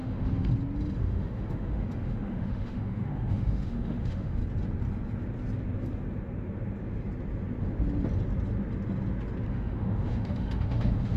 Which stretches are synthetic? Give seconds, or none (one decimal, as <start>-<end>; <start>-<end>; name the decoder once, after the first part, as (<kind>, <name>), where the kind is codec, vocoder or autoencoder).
0.0-0.5 (autoencoder, DAC-VAE); 1.0-4.4; 9.5-11.2